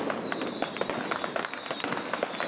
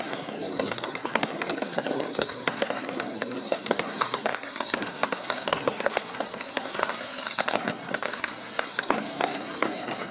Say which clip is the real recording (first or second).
first